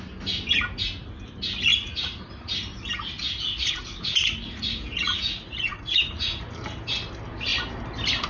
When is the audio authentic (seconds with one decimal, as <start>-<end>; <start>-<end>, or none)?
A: 0.0-1.7; 2.3-3.5; 6.4-8.3